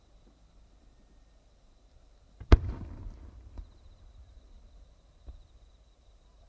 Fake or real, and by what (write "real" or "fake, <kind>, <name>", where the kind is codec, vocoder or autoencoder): fake, vocoder, BigVGAN v2